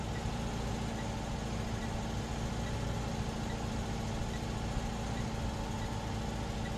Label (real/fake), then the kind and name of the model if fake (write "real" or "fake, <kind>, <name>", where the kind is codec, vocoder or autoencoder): real